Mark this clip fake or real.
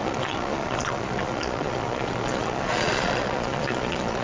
fake